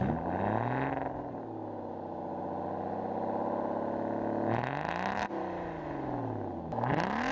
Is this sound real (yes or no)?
yes